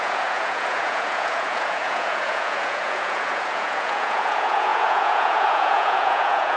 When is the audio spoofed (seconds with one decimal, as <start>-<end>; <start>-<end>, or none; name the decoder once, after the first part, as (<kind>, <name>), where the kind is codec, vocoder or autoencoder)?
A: 0.0-6.6 (vocoder, Vocos)